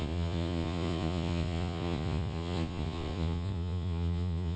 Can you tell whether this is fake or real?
fake